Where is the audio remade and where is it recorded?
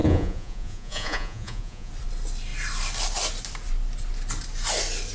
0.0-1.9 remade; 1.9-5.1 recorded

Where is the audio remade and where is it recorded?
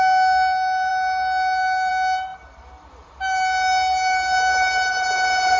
0.0-5.6 recorded